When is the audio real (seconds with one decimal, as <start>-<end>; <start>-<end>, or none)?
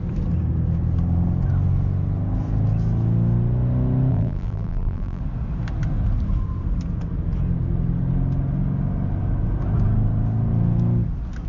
0.0-4.1; 5.2-11.5